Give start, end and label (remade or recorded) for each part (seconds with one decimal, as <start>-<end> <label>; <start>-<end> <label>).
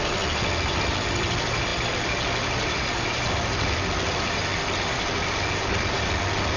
0.0-6.6 recorded